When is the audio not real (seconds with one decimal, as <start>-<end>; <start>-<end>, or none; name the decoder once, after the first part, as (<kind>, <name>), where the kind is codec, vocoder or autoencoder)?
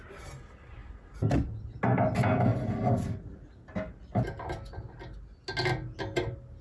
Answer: none